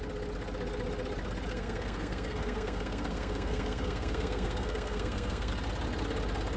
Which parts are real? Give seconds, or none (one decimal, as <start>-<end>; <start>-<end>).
0.0-1.5; 5.5-6.6